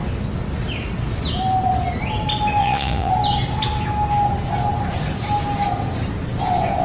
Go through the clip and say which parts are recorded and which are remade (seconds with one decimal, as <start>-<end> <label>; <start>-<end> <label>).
0.0-2.6 recorded; 2.6-3.1 remade; 3.1-6.8 recorded